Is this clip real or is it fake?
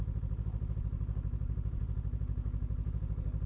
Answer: real